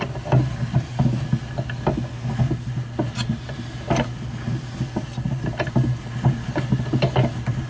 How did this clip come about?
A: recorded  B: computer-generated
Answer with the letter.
A